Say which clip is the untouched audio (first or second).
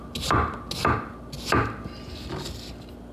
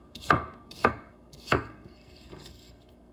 first